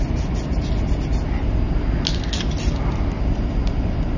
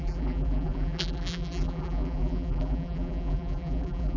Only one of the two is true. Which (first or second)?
first